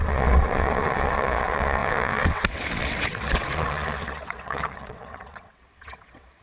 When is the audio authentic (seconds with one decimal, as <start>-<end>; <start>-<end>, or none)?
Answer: none